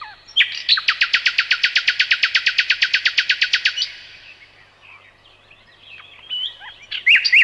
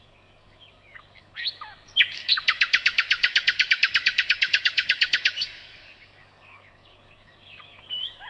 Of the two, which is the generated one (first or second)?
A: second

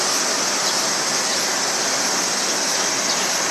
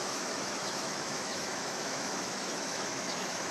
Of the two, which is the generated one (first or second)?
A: second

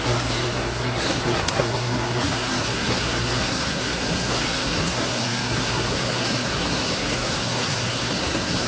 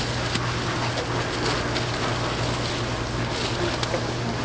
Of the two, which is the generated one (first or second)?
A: first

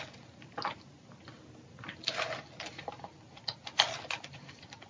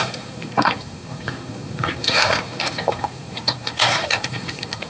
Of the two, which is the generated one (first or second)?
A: second